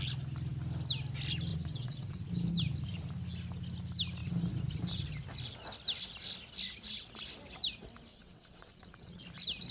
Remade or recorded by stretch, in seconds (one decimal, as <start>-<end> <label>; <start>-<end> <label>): 0.0-1.5 recorded; 1.5-2.3 remade; 2.3-8.1 recorded; 8.1-9.2 remade; 9.2-9.7 recorded